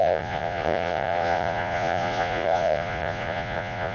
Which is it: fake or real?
fake